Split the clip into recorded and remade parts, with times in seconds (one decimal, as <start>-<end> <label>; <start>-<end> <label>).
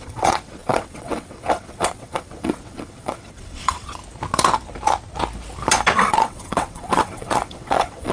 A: 0.0-4.0 remade; 4.0-6.1 recorded; 6.1-8.1 remade